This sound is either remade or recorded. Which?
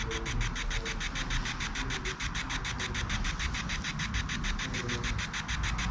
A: recorded